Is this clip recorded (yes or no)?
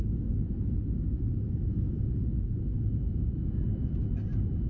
yes